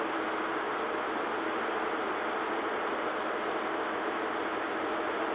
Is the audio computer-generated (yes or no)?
no